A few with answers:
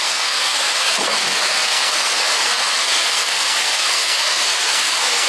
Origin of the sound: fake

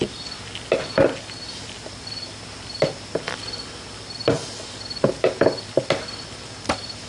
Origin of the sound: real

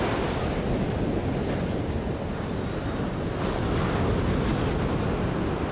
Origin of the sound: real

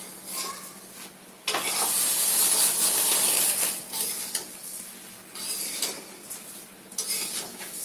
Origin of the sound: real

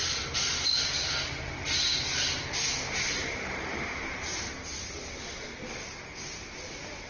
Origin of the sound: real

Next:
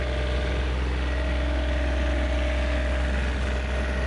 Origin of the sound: real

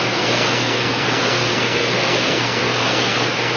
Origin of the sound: fake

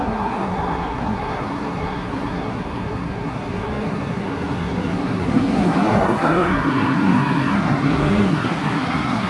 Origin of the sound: fake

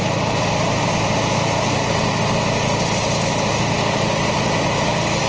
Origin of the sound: real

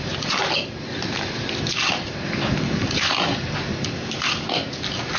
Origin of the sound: real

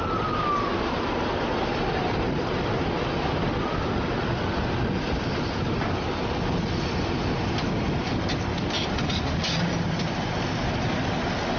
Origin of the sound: real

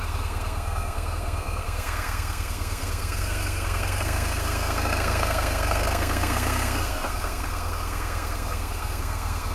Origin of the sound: fake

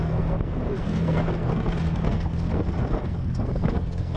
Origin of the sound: fake